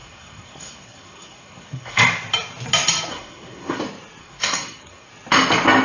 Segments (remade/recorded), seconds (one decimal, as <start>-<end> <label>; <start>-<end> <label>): 0.0-2.0 remade; 2.0-3.1 recorded; 3.1-3.8 remade; 3.8-4.2 recorded; 4.2-5.1 remade; 5.1-5.8 recorded